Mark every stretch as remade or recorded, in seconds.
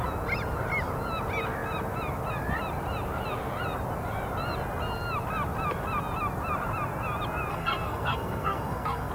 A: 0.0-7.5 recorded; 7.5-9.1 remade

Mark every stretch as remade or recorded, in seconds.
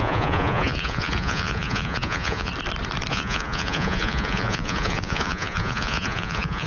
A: 0.0-2.5 remade; 2.5-3.1 recorded; 3.1-6.7 remade